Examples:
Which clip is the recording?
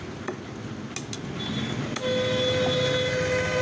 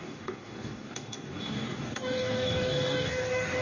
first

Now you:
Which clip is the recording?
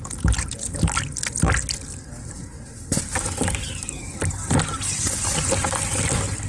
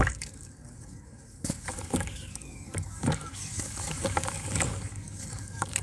first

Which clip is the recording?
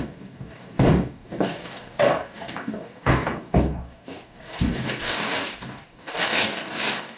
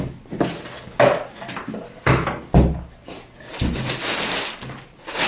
second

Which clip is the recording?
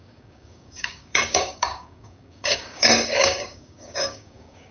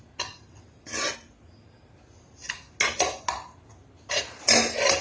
second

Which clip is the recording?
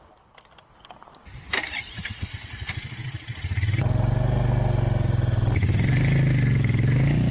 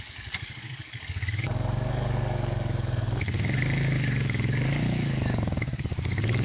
first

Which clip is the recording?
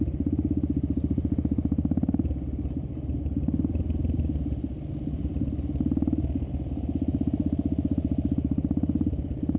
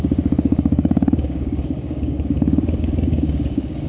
first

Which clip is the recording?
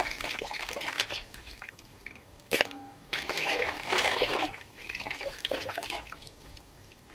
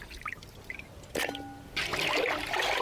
second